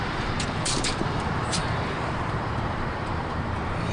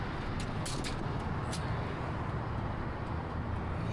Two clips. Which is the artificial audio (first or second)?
first